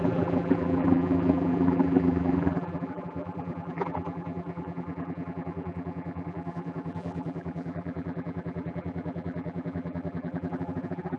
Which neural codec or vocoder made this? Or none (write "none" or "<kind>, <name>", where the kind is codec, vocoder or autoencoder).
vocoder, BigVGAN v2